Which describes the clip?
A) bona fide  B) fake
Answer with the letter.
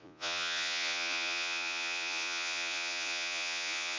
B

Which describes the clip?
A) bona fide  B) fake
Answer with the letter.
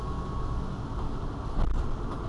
A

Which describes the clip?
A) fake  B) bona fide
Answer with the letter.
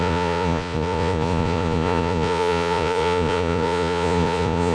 A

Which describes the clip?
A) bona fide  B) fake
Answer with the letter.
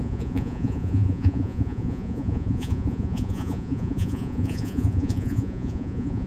B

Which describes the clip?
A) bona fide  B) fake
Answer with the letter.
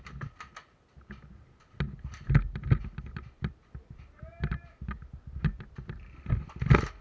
A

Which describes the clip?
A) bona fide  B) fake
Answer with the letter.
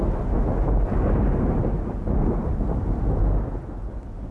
A